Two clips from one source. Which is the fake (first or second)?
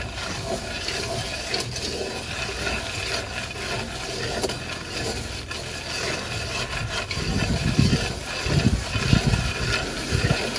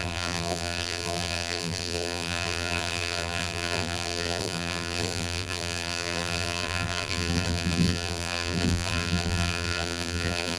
second